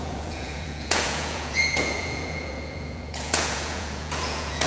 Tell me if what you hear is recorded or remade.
remade